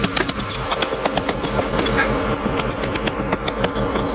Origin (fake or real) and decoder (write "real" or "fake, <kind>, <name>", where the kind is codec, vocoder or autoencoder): real